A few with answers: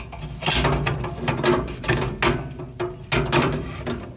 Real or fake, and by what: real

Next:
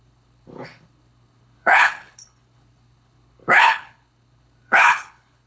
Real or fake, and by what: fake, codec, HILCodec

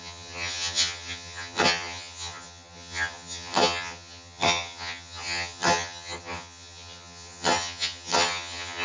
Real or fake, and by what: fake, vocoder, HiFi-GAN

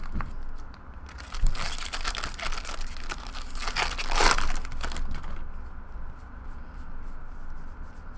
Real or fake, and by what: real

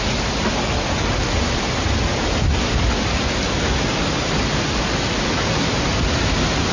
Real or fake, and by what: real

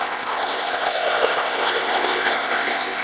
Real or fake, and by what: fake, codec, ZipCodec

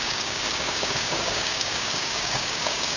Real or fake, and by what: fake, codec, DAC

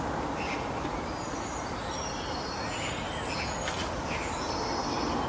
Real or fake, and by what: real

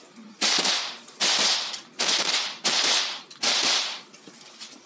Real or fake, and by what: fake, vocoder, BigVGAN v2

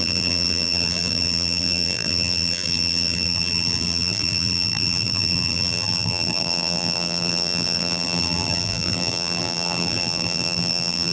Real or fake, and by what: fake, vocoder, BigVGAN v2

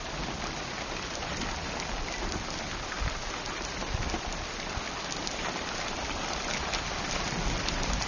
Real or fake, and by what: real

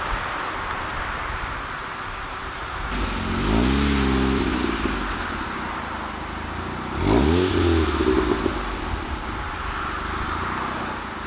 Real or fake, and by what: real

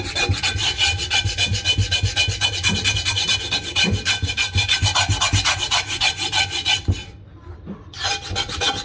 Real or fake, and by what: real